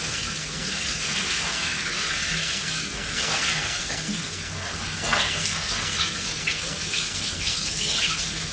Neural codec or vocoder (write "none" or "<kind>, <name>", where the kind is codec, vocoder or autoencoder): codec, SNAC